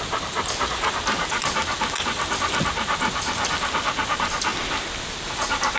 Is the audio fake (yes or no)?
no